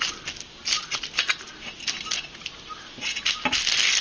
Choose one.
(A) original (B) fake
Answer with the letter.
A